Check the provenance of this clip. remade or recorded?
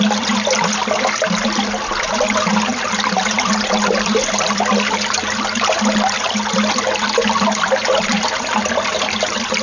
recorded